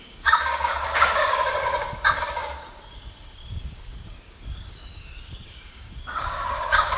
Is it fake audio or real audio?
fake